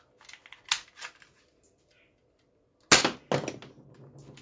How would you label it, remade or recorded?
recorded